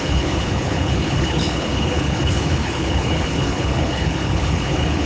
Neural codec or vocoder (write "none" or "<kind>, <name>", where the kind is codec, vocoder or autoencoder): codec, HILCodec